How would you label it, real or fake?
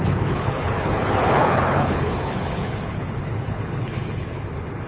fake